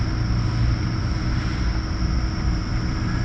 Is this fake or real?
real